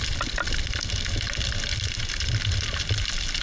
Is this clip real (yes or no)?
yes